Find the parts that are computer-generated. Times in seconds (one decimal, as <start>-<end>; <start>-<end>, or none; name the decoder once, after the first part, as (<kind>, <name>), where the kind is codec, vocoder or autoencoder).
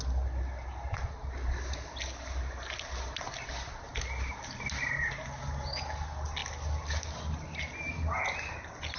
none